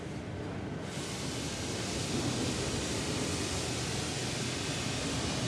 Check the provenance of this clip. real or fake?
real